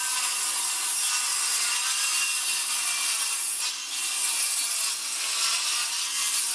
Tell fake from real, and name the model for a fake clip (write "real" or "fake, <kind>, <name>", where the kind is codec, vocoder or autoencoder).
real